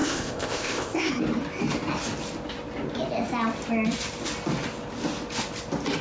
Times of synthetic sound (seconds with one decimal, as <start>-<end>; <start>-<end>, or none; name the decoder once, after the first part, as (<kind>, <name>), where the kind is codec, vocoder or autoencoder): 0.0-1.1 (codec, ZipCodec)